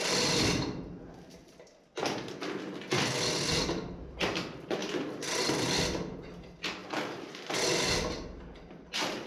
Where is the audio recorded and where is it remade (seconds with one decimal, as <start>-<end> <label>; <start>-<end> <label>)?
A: 0.0-9.3 recorded